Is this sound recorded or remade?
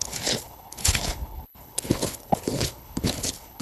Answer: remade